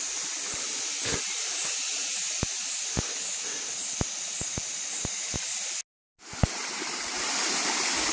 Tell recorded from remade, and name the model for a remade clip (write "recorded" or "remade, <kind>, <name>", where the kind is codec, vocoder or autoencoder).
recorded